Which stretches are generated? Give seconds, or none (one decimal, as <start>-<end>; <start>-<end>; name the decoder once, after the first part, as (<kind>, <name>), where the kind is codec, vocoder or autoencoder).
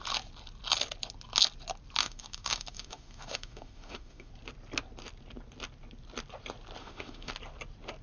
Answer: 2.0-4.3 (autoencoder, DAC-VAE); 6.8-7.3